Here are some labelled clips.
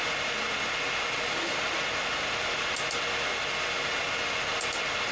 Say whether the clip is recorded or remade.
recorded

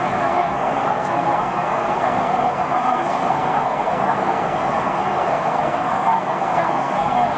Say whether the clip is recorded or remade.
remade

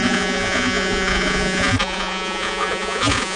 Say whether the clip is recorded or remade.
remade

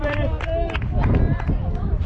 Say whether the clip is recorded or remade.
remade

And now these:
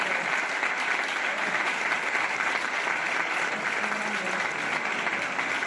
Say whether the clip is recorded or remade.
recorded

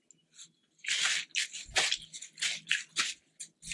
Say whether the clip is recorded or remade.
recorded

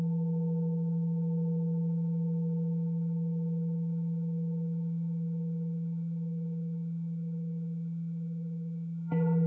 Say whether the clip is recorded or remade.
remade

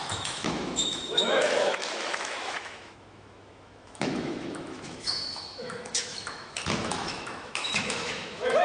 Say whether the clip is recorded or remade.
remade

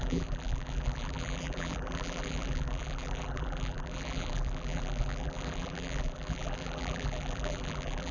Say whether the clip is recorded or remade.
remade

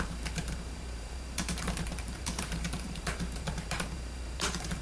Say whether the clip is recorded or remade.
remade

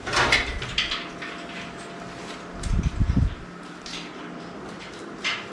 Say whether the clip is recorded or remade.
recorded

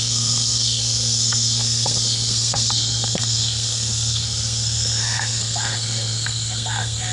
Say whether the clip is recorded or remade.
remade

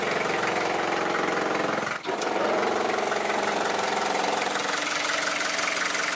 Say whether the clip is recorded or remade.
recorded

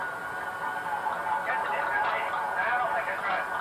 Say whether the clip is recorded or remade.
recorded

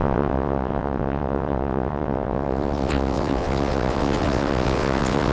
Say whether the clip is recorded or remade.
remade